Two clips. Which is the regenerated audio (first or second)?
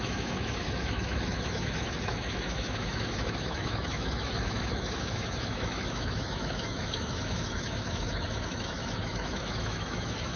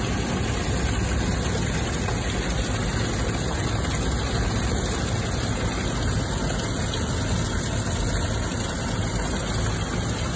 first